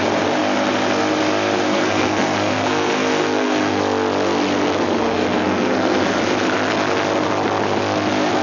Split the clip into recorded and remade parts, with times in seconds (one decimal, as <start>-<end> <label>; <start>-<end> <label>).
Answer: 0.0-1.7 recorded; 1.7-3.8 remade; 3.8-5.0 recorded; 5.0-6.2 remade; 6.2-8.4 recorded